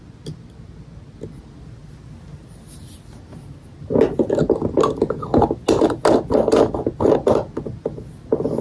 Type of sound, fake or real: real